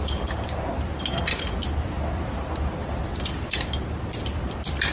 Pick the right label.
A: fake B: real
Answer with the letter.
B